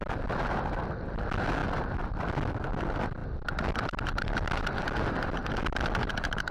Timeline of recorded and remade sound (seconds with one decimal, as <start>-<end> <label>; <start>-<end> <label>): 0.0-6.5 recorded